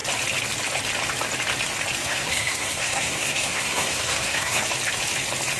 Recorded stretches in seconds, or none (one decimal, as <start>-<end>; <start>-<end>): 0.0-2.0; 4.6-5.6